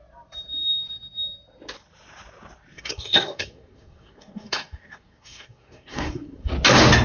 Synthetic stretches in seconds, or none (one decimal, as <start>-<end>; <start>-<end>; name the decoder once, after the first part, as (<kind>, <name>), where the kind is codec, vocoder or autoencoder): 2.7-6.5 (codec, SNAC)